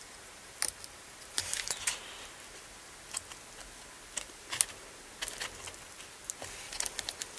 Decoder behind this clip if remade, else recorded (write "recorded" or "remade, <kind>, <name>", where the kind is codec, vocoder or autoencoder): recorded